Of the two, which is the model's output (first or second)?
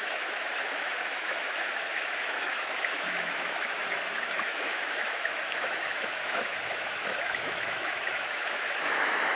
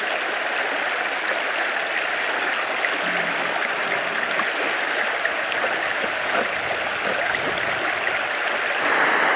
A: first